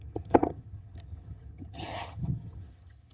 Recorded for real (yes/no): no